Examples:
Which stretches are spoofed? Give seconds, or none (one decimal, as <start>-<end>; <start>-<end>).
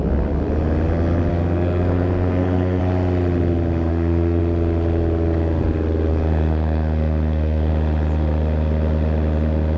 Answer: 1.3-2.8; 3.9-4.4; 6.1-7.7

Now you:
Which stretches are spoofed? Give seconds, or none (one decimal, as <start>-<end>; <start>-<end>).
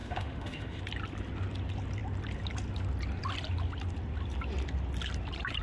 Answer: 0.0-0.8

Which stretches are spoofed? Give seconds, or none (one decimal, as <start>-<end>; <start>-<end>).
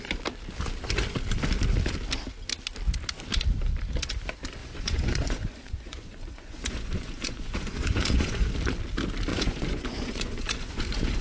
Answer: 4.6-8.5; 9.3-11.2